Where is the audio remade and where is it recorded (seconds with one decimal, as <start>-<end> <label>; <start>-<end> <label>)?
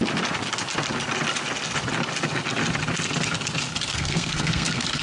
0.0-3.9 recorded; 3.9-5.0 remade